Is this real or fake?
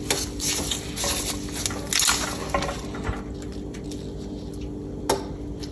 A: real